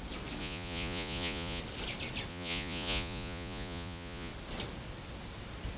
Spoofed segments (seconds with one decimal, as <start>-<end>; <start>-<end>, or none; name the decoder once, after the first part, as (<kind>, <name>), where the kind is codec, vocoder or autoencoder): 0.4-1.6 (vocoder, Vocos); 2.3-4.3